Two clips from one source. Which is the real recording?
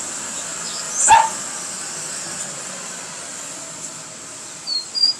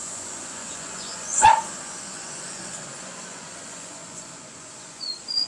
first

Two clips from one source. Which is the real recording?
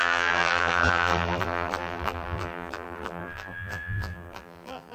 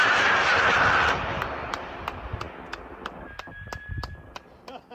second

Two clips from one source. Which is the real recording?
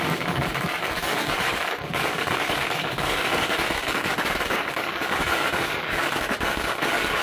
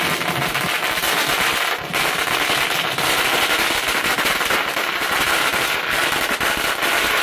second